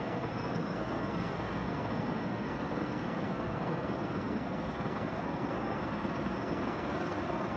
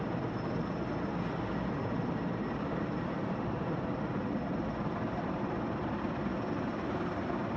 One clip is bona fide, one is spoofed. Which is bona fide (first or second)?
second